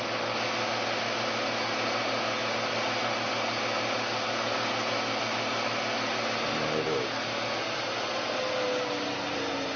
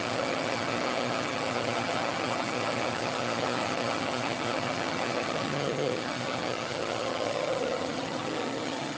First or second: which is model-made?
second